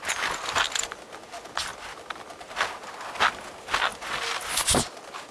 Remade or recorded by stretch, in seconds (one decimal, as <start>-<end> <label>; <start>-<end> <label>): 0.0-1.7 recorded; 1.7-2.2 remade; 2.2-3.9 recorded; 3.9-4.8 remade; 4.8-5.3 recorded